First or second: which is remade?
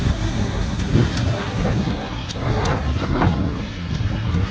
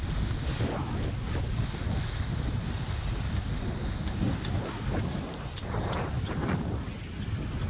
first